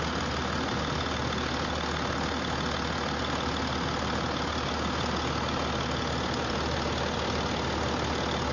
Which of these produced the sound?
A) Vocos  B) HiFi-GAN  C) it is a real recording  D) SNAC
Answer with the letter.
C